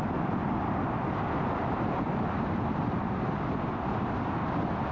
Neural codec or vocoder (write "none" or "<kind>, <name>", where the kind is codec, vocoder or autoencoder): none